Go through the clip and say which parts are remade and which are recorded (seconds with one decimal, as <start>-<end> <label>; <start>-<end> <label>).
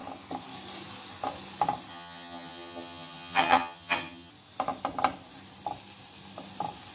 0.0-1.9 recorded; 1.9-4.3 remade; 4.3-6.9 recorded